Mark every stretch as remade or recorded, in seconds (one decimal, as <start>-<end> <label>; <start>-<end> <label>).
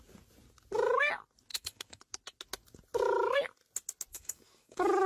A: 0.0-1.5 recorded; 1.5-2.0 remade; 2.0-4.1 recorded; 4.1-5.1 remade